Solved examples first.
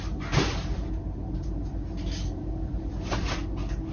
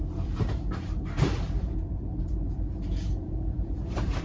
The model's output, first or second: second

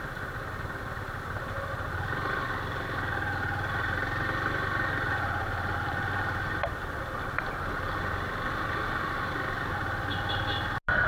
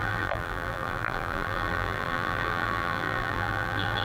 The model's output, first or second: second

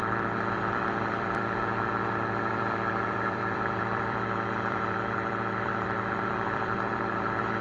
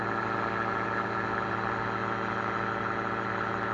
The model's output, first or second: first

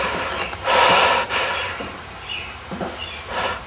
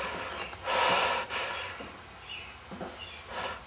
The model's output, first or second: first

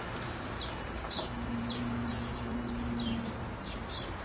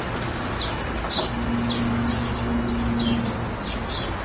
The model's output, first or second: first